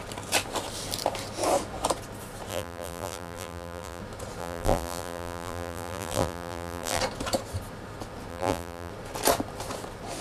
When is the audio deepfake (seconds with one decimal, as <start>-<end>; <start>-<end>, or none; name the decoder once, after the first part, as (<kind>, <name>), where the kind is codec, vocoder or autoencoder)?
2.5-4.0 (vocoder, BigVGAN v2); 4.4-7.0; 8.3-8.9